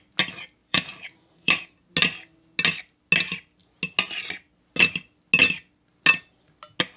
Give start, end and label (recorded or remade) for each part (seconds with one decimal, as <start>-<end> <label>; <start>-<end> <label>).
0.0-0.6 recorded; 0.6-1.6 remade; 1.6-7.0 recorded